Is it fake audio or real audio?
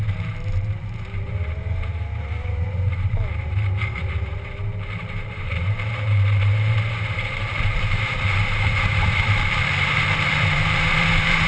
fake